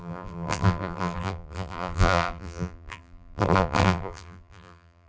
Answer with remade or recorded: remade